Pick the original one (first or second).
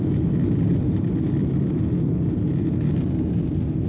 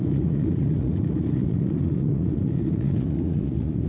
first